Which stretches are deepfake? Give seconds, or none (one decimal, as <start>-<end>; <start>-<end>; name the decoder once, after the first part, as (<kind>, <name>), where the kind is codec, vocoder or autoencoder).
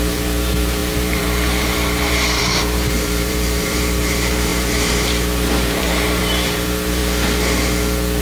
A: 0.0-7.0 (vocoder, BigVGAN v2)